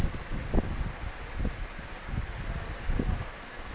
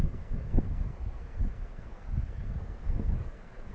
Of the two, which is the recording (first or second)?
first